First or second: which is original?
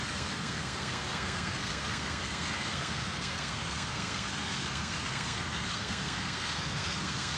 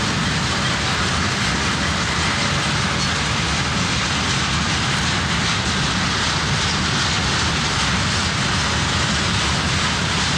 second